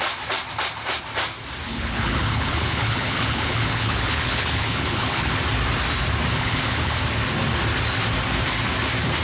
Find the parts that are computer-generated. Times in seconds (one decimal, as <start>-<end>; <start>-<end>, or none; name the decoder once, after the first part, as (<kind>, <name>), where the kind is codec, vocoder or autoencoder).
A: 1.7-5.3 (codec, HILCodec); 6.3-7.0